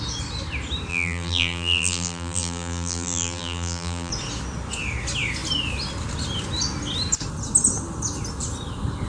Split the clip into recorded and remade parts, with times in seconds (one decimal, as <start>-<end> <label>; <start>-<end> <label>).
0.0-0.9 recorded; 0.9-4.1 remade; 4.1-9.1 recorded